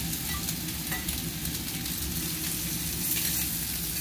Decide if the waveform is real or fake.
real